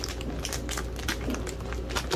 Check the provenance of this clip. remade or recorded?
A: recorded